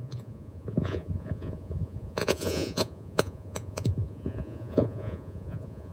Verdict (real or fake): fake